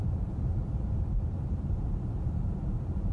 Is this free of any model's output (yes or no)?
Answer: no